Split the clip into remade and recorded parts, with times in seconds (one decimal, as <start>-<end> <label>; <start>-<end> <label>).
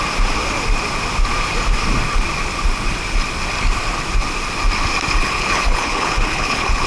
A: 0.0-5.2 recorded; 5.2-6.9 remade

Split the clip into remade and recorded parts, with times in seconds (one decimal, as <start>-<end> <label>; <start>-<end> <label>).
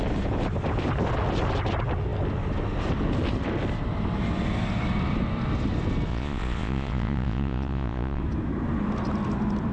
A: 0.0-6.1 recorded; 6.1-8.2 remade; 8.2-9.7 recorded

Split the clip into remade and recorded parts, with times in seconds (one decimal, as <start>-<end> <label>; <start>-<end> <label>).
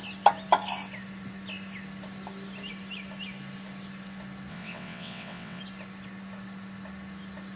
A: 0.0-4.5 recorded; 4.5-5.6 remade; 5.6-7.6 recorded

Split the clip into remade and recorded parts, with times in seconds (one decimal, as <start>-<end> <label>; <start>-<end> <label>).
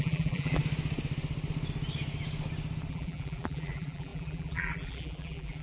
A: 0.0-0.6 remade; 0.6-2.9 recorded; 2.9-5.6 remade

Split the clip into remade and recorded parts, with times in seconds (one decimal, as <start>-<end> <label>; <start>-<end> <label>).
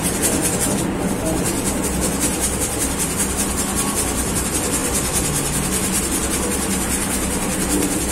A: 0.0-8.1 recorded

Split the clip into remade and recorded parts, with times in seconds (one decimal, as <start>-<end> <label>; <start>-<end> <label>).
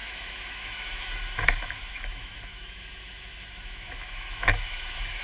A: 0.0-5.2 remade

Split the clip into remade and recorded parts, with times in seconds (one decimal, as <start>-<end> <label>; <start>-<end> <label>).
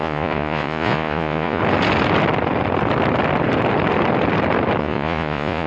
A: 0.0-1.6 remade; 1.6-4.8 recorded; 4.8-5.7 remade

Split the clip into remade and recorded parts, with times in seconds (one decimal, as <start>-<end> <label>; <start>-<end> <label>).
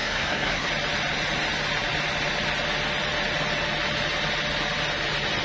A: 0.0-0.7 remade; 0.7-5.4 recorded